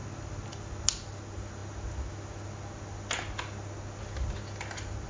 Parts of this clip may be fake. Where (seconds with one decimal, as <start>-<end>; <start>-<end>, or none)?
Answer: none